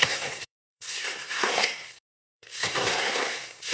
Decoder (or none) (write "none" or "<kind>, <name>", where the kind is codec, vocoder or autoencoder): codec, SNAC